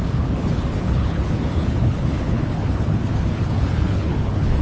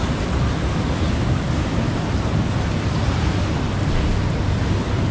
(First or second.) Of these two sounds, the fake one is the first